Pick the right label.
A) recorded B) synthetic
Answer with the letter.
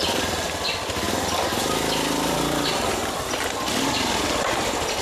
B